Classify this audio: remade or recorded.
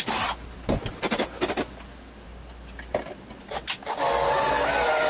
recorded